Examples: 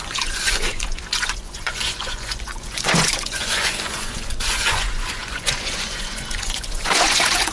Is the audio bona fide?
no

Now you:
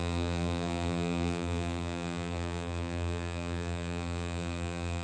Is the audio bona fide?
no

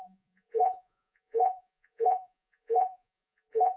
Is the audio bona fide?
no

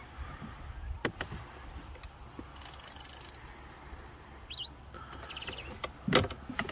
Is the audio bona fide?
yes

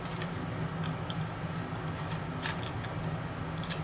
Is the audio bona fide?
yes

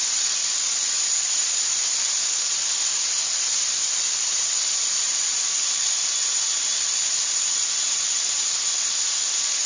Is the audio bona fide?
no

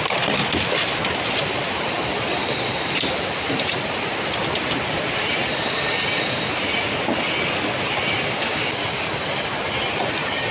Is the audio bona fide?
yes